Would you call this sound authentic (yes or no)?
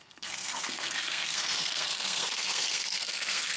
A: no